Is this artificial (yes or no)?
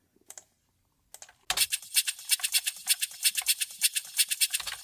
no